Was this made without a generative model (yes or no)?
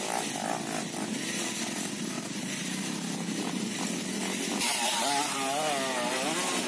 yes